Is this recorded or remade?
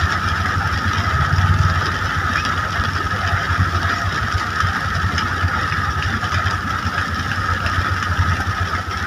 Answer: recorded